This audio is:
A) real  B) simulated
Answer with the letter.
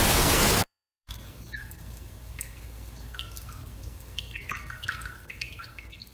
B